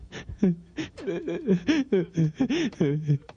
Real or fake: fake